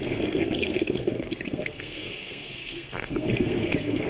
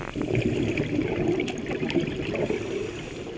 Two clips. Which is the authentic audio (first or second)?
second